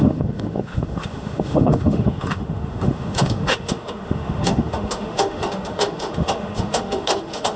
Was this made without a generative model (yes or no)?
no